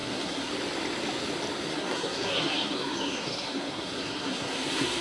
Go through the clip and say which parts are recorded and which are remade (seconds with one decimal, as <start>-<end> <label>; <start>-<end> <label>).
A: 0.0-0.5 remade; 0.5-1.7 recorded; 1.7-5.0 remade